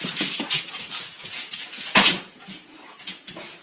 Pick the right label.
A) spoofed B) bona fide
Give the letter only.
A